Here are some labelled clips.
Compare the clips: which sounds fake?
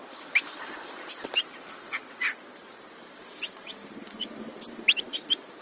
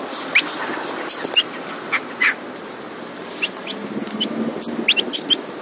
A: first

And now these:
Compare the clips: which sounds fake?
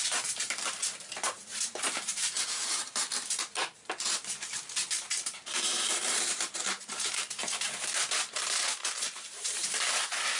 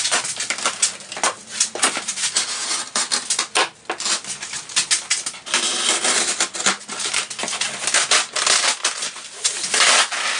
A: first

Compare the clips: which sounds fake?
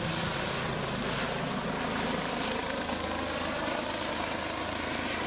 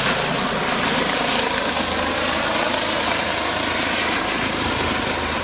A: second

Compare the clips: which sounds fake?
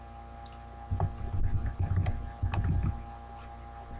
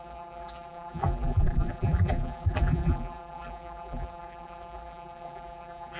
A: second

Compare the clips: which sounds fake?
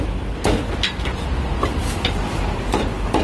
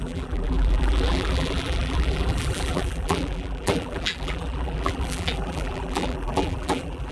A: second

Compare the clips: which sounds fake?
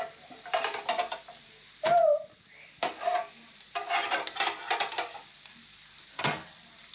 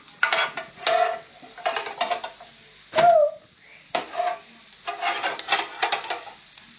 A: first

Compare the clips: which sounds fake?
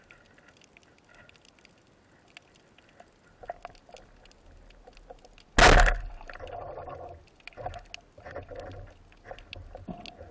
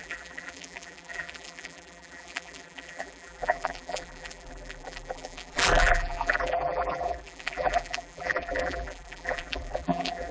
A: second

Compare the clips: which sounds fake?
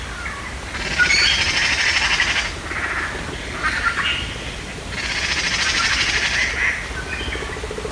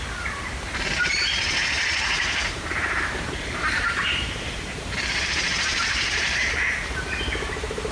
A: second